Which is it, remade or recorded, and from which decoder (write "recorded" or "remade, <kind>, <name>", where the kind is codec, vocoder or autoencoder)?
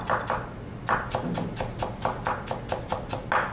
recorded